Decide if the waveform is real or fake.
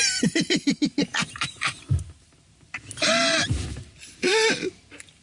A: fake